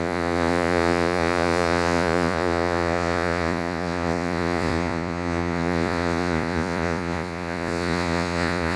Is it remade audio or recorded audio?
remade